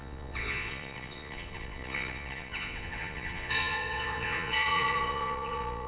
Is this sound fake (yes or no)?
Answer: yes